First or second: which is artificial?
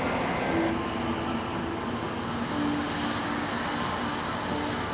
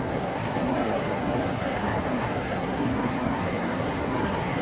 second